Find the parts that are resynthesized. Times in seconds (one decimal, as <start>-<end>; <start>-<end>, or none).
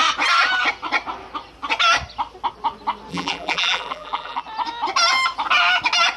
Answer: 3.1-4.4